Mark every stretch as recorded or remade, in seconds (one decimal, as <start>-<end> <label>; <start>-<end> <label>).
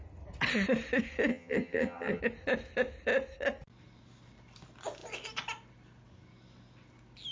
0.0-1.3 recorded; 1.3-2.2 remade; 2.2-7.3 recorded